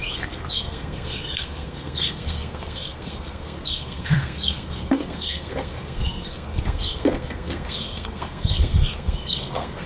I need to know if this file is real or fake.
fake